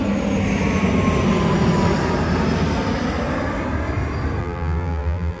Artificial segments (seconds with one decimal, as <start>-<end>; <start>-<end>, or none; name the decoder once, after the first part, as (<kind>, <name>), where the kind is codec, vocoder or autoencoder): 4.4-5.4 (vocoder, BigVGAN v2)

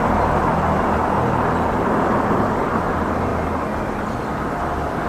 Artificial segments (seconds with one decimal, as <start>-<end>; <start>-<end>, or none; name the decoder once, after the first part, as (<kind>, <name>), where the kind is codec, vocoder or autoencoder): 0.0-1.0 (vocoder, BigVGAN v2); 1.7-3.3

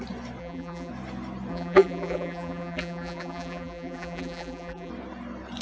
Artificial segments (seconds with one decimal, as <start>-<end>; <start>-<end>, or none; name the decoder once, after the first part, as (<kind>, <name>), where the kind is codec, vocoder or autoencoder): 0.4-0.9 (vocoder, BigVGAN v2); 1.5-4.9

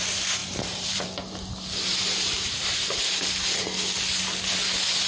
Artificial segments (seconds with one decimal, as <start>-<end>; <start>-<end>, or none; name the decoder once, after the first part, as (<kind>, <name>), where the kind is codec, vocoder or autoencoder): 0.4-1.0 (vocoder, BigVGAN v2); 1.9-2.6